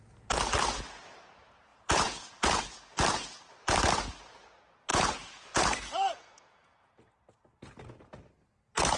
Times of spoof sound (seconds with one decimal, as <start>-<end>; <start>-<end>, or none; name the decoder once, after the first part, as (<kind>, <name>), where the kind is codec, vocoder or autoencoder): 1.7-2.6 (vocoder, Vocos); 4.9-7.1